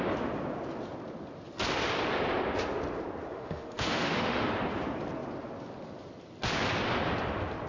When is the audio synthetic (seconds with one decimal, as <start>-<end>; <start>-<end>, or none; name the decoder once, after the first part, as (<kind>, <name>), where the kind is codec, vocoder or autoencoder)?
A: 3.3-4.5 (autoencoder, DAC-VAE)